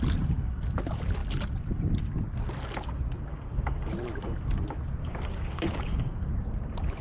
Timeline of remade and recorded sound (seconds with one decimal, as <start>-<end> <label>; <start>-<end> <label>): 0.0-3.3 recorded; 3.3-3.9 remade; 3.9-5.0 recorded; 5.0-6.3 remade; 6.3-7.0 recorded